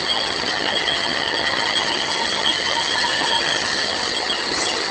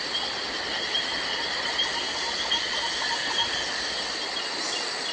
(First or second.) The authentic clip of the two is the second